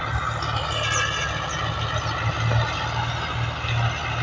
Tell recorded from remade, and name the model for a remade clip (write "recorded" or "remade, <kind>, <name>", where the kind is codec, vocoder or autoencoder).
recorded